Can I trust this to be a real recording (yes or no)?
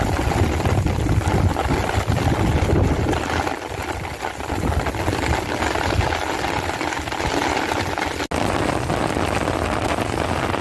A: yes